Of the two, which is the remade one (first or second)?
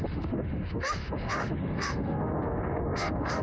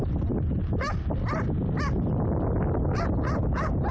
first